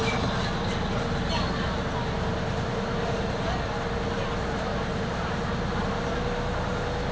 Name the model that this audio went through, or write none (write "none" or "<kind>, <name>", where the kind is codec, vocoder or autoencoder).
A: none